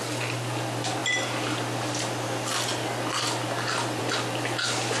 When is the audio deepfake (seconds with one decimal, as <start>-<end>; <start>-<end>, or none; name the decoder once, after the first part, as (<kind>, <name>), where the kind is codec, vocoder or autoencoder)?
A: none